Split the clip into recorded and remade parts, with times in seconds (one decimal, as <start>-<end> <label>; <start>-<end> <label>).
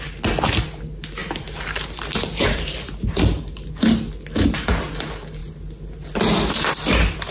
0.0-1.2 recorded; 1.2-3.7 remade; 3.7-7.3 recorded